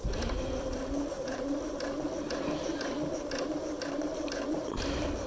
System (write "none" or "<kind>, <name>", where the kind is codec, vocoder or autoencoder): none